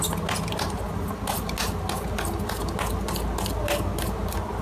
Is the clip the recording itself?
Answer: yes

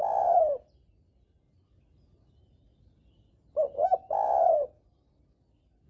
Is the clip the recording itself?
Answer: yes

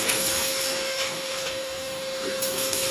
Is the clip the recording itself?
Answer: no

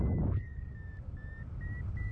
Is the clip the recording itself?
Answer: yes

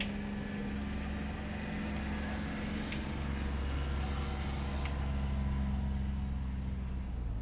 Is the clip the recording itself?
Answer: yes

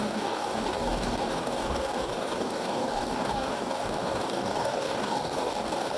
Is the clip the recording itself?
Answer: no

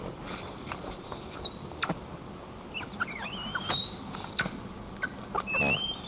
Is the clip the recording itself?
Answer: yes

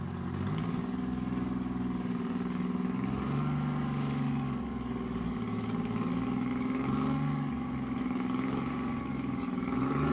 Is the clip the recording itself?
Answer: no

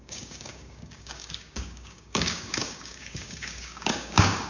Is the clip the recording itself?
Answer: no